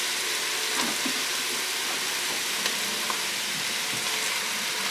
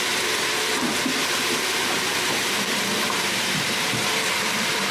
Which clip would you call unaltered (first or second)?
first